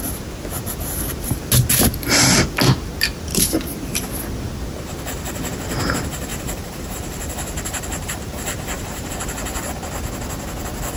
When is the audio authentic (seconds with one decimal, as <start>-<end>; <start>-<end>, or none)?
0.0-3.3; 4.0-6.3; 9.1-11.0